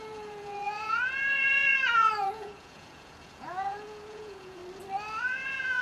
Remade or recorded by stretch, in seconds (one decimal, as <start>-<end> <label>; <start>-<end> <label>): 0.0-4.6 remade; 4.6-5.2 recorded; 5.2-5.8 remade